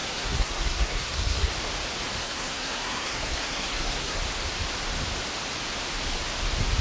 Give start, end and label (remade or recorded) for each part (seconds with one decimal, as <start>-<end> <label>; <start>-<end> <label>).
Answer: 0.0-1.5 remade; 1.5-2.2 recorded; 2.2-4.2 remade; 4.2-6.8 recorded